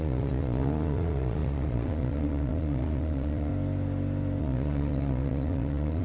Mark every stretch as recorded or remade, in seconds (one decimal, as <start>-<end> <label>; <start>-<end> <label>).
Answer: 0.0-3.5 remade; 3.5-4.4 recorded; 4.4-6.0 remade